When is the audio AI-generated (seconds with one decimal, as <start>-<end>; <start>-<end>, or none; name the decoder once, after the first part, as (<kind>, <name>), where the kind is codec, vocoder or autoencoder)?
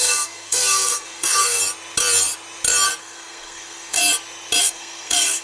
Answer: 0.0-1.6 (codec, SNAC); 3.0-4.0; 4.6-5.4